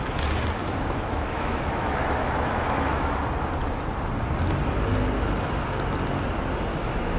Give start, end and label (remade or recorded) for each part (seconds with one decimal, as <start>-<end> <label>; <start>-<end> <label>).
0.0-0.6 recorded; 0.6-3.2 remade; 3.2-6.7 recorded; 6.7-7.2 remade